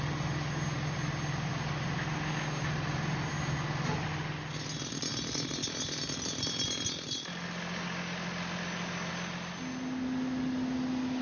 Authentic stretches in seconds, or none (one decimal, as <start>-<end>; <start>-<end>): 0.0-11.2